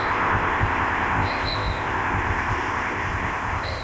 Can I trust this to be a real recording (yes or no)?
no